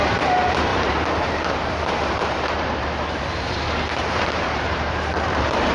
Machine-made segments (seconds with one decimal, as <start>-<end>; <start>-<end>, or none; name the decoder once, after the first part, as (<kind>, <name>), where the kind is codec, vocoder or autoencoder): 0.0-5.7 (vocoder, BigVGAN v2)